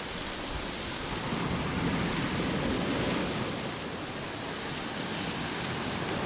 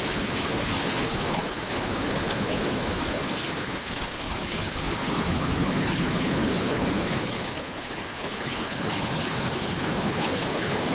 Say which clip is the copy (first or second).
second